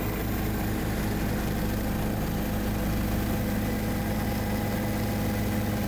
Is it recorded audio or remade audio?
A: recorded